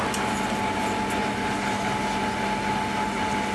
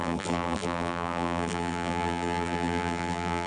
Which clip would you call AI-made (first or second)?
second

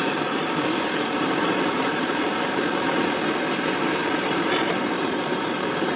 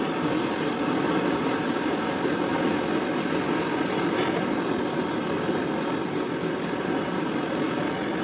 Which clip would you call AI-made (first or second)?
first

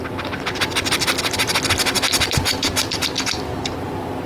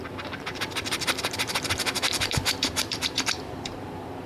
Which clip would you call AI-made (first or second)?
second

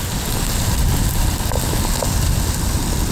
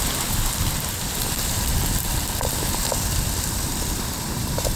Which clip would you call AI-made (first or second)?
second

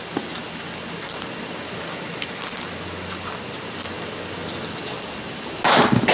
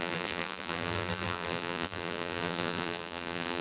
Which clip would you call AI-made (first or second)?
second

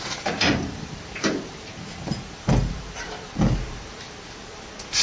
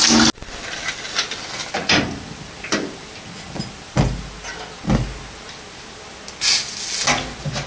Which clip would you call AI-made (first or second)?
first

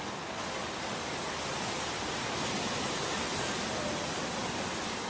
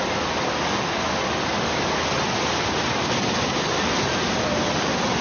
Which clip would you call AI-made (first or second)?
first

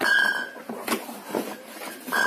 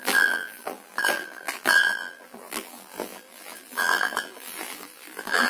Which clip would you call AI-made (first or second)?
second